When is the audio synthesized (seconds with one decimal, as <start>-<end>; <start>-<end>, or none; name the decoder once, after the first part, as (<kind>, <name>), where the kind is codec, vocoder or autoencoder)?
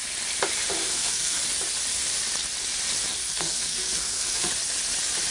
0.8-1.4 (codec, SNAC); 3.2-4.5